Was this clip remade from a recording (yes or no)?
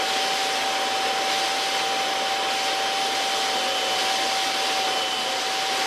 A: no